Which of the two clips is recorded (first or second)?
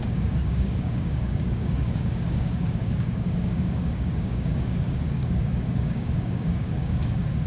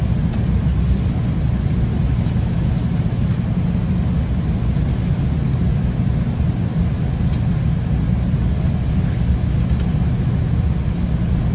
second